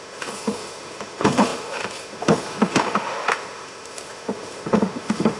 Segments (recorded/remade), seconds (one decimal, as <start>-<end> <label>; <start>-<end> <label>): 0.0-5.4 remade